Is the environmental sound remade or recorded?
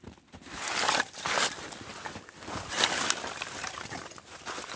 recorded